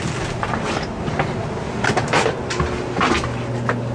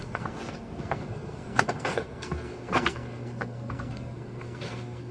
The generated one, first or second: second